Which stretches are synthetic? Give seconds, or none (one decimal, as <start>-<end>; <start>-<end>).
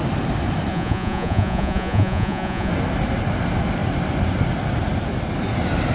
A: 0.7-2.7